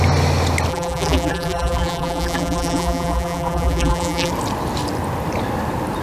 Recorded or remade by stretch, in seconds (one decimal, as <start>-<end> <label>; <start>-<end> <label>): 0.0-0.7 recorded; 0.7-4.3 remade; 4.3-6.0 recorded